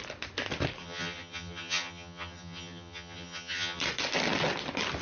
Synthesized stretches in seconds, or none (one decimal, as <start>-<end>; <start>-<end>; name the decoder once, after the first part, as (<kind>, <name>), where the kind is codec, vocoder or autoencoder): 0.8-3.8 (vocoder, HiFi-GAN)